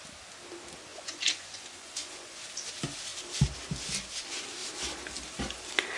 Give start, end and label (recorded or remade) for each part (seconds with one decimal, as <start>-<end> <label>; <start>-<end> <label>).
0.0-0.9 recorded; 0.9-2.4 remade; 2.4-6.0 recorded